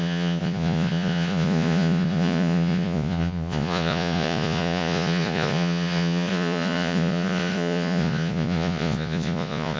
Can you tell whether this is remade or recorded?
remade